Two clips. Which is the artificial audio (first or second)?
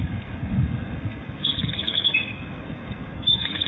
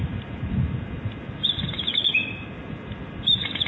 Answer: first